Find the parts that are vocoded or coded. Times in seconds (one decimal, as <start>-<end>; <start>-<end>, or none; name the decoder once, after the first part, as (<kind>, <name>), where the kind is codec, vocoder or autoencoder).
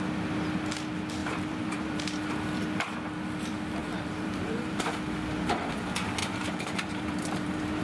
1.2-2.2 (vocoder, BigVGAN v2); 3.8-4.9; 6.2-7.8